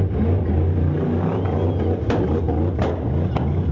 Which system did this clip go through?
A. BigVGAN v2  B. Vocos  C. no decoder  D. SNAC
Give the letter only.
C